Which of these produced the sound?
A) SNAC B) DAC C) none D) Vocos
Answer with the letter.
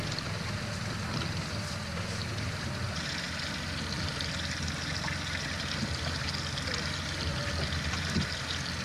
C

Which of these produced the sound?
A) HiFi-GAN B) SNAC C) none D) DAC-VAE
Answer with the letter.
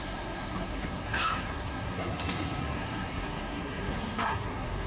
B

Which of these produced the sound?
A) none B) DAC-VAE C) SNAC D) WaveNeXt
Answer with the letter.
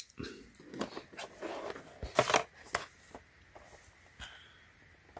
A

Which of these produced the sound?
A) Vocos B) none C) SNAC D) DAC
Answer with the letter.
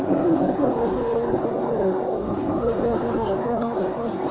C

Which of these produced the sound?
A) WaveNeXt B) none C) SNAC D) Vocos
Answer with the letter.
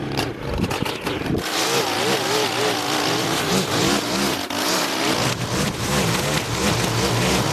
B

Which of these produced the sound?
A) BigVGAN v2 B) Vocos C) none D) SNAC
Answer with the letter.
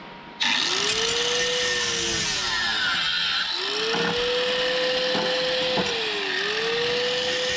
C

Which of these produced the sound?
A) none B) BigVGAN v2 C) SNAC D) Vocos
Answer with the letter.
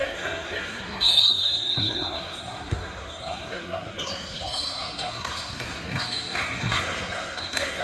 C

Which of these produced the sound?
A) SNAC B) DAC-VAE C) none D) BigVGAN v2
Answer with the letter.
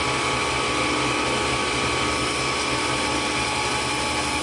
C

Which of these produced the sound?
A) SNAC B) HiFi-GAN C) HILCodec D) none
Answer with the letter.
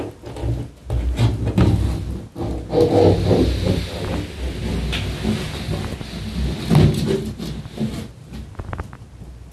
D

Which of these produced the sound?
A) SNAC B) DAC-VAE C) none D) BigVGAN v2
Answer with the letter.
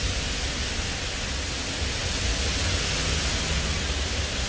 C